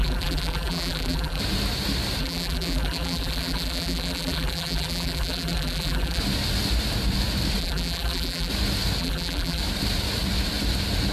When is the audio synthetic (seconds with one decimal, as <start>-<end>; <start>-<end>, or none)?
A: 0.0-1.4; 2.2-6.2; 7.6-8.5; 9.0-9.6